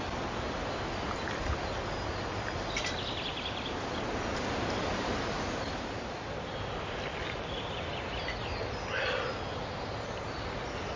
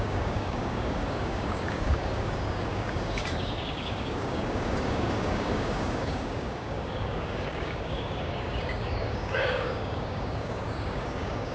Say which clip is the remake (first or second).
second